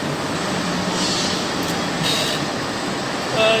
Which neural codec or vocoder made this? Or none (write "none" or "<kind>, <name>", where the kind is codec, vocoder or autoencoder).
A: none